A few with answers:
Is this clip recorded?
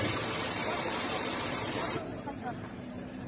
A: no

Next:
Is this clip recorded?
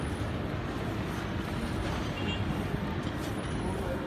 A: yes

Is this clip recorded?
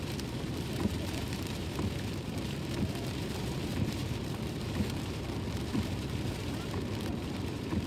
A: no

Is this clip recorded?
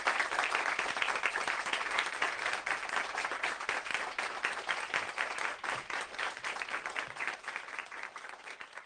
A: no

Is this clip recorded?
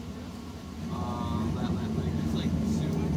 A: yes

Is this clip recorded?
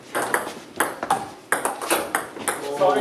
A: yes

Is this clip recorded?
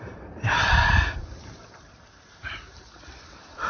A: no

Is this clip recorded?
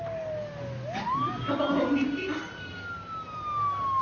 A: yes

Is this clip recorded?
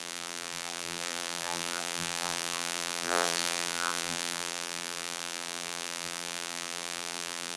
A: no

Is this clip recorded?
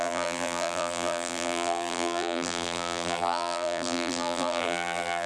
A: no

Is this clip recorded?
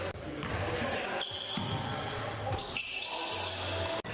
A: yes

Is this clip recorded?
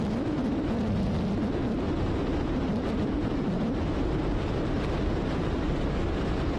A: no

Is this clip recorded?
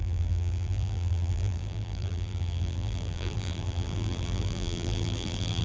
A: no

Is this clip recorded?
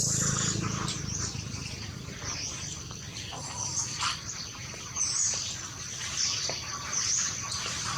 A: yes